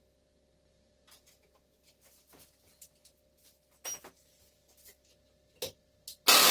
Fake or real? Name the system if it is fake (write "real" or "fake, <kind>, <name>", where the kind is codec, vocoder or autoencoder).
real